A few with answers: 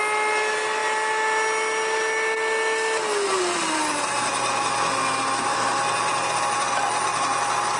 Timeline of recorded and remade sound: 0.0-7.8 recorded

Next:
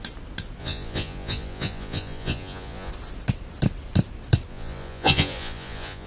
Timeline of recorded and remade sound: 0.0-0.6 recorded; 0.6-2.9 remade; 2.9-4.5 recorded; 4.5-6.1 remade